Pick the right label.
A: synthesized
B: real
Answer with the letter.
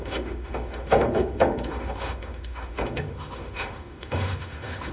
A